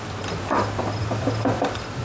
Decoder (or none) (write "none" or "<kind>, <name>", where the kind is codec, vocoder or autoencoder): vocoder, BigVGAN v2